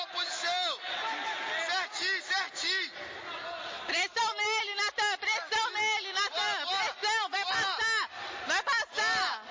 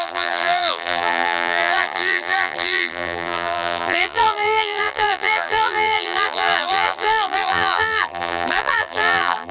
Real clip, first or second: first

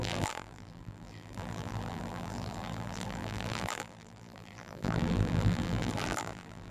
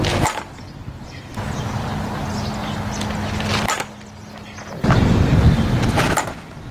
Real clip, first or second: second